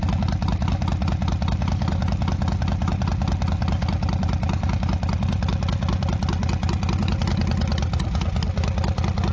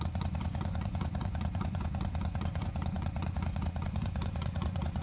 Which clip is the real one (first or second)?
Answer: first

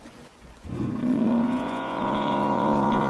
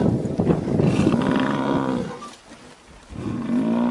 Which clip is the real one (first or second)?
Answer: second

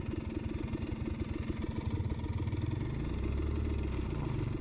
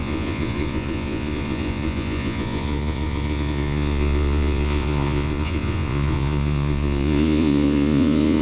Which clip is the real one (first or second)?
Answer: first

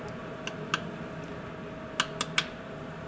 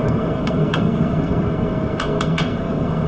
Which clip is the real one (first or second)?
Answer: first